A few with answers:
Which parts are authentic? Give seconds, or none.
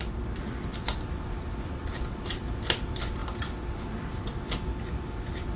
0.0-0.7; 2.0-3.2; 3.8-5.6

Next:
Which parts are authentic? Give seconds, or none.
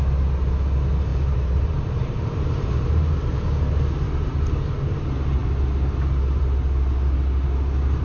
0.0-1.1; 3.8-8.0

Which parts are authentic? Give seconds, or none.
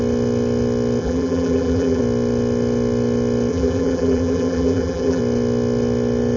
0.0-1.0; 2.0-3.5; 5.2-6.4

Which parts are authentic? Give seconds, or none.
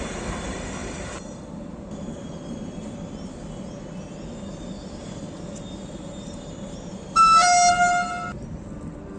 0.0-0.8; 1.4-9.2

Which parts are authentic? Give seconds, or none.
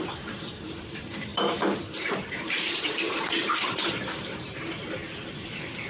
5.0-5.9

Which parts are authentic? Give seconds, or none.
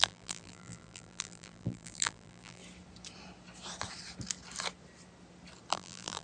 2.6-5.7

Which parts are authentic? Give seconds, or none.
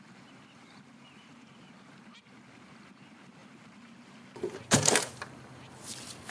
0.0-0.6; 1.3-3.4; 5.1-6.3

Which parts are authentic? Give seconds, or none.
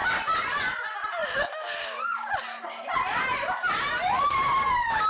0.0-5.1